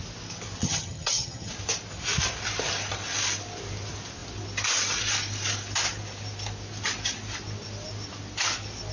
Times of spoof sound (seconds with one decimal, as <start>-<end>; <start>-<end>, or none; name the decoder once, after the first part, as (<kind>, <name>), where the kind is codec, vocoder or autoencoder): 0.6-1.5 (vocoder, HiFi-GAN)

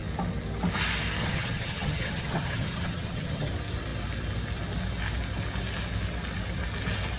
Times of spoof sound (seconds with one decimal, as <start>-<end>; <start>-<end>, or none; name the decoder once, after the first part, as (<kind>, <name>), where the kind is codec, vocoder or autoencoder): 1.2-3.5 (vocoder, HiFi-GAN)

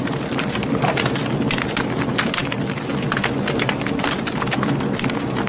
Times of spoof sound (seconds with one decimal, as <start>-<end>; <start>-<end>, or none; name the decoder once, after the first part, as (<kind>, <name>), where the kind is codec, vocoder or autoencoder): none

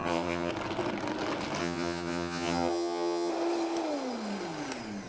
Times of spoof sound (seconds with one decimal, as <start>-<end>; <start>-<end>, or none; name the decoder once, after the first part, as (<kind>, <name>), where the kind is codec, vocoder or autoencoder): 0.0-0.5 (vocoder, HiFi-GAN); 1.6-3.3

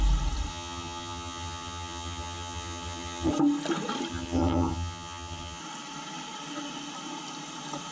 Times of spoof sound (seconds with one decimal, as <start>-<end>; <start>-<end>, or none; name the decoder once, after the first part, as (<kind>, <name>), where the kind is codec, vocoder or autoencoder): 0.5-3.3 (vocoder, HiFi-GAN); 4.1-5.6

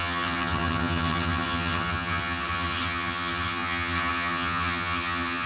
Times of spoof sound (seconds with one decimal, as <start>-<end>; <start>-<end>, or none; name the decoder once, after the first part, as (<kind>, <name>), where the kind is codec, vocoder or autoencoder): 0.0-5.5 (vocoder, HiFi-GAN)

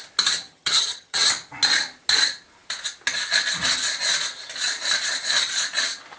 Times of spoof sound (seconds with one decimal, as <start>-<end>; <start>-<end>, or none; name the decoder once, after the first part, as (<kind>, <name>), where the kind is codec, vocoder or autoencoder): 0.5-1.3 (vocoder, HiFi-GAN)